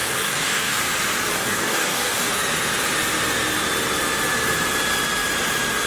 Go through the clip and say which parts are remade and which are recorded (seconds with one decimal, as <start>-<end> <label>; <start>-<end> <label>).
0.0-0.8 remade; 0.8-1.3 recorded; 1.3-2.3 remade; 2.3-5.9 recorded